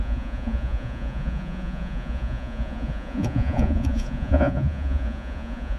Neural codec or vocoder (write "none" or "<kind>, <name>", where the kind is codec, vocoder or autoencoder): vocoder, Vocos